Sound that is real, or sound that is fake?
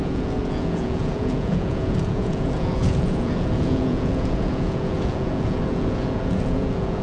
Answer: fake